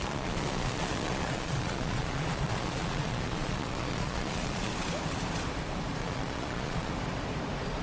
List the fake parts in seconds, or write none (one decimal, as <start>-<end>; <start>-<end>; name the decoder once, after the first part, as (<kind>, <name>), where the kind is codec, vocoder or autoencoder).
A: 0.0-4.7 (vocoder, Vocos); 6.0-6.9